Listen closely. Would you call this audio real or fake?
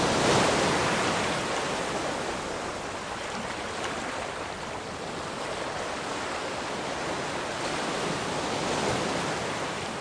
real